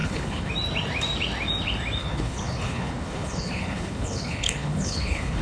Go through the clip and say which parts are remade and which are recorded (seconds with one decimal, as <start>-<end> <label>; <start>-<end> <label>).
0.0-0.5 remade; 0.5-2.0 recorded; 2.0-5.4 remade